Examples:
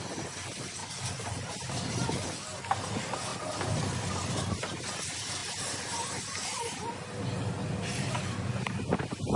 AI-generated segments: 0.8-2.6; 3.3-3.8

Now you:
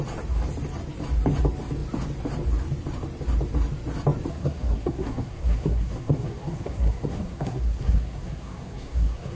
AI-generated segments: 4.3-9.4

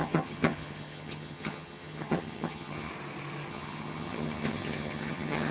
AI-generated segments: 0.0-2.9; 3.5-5.5

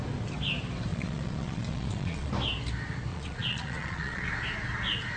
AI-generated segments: 0.9-2.3; 3.1-4.3